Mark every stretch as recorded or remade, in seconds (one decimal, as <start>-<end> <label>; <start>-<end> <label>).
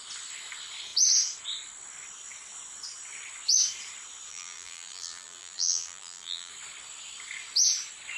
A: 0.0-4.3 recorded; 4.3-6.5 remade; 6.5-8.2 recorded